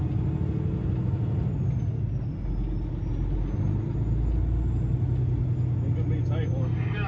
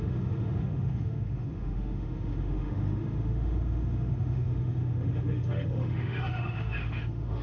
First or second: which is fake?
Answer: second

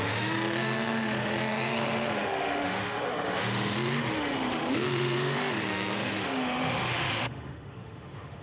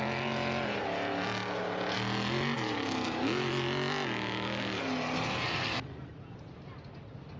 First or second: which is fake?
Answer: first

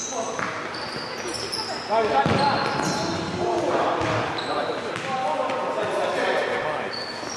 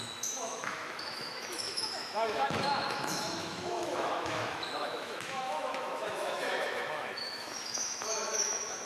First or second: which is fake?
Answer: second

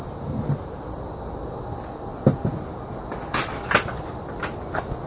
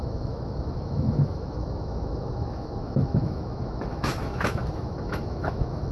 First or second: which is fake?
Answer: second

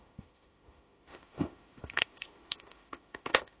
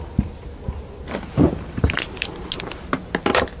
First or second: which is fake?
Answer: first